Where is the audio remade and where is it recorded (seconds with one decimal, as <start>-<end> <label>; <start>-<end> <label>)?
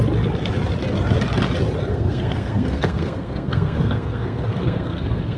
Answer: 0.0-1.9 recorded; 1.9-5.4 remade